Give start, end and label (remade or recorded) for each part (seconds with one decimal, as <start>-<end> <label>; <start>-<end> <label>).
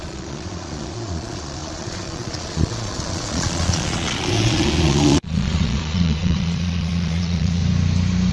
0.0-7.6 remade; 7.6-8.3 recorded